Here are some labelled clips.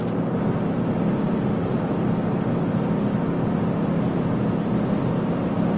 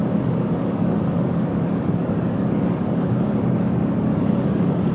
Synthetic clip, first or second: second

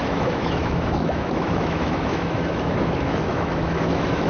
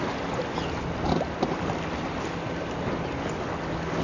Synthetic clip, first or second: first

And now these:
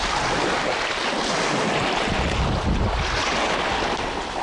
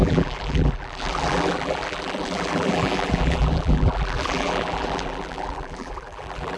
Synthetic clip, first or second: second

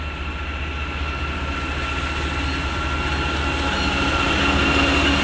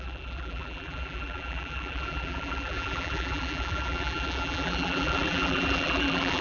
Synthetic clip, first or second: second